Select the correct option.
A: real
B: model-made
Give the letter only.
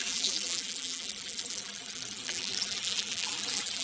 B